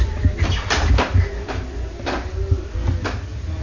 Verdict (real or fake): real